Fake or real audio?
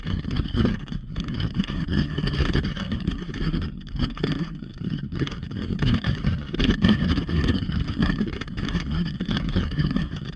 fake